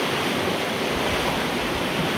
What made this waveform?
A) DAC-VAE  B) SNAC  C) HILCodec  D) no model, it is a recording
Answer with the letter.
D